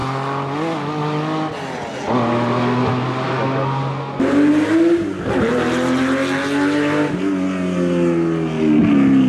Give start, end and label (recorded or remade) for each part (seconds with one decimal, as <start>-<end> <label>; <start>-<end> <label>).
0.0-9.3 recorded